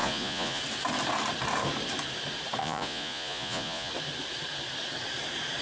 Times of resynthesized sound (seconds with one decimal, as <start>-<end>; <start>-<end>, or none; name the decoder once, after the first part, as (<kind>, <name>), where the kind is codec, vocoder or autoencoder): 0.0-0.6 (vocoder, Vocos); 2.6-3.9